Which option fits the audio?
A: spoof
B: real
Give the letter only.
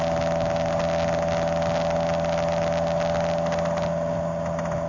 B